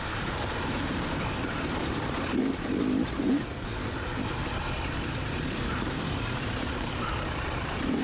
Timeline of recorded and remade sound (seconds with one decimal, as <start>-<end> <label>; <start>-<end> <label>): 0.0-3.7 remade; 3.7-5.2 recorded; 5.2-8.0 remade